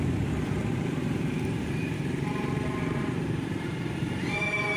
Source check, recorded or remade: remade